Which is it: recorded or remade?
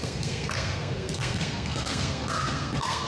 remade